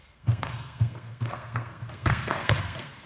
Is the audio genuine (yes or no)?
no